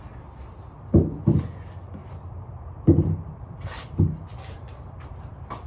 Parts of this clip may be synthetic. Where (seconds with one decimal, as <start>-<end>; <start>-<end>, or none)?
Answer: 2.0-5.7